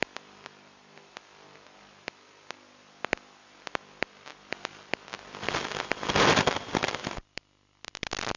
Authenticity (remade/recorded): recorded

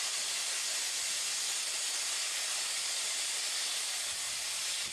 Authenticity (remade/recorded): recorded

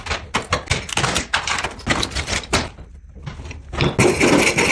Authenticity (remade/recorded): recorded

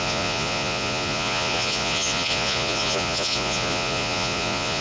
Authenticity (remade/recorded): remade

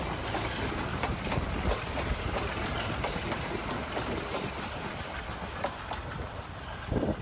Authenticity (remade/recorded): recorded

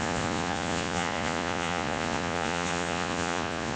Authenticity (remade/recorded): remade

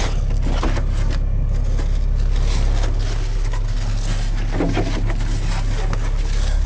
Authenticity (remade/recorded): recorded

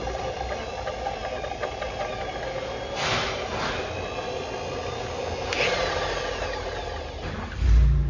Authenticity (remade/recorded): recorded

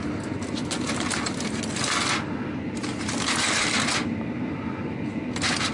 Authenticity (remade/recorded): recorded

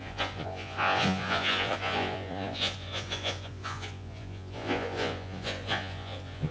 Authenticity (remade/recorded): remade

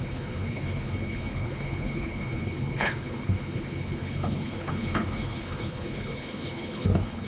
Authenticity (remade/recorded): remade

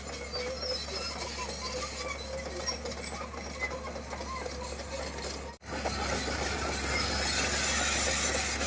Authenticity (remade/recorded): recorded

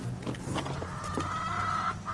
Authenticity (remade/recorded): recorded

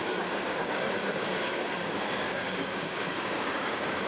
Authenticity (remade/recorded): remade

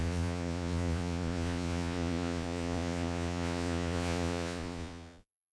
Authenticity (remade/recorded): remade